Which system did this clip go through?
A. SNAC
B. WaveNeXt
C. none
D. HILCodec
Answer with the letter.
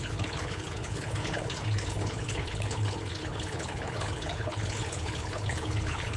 D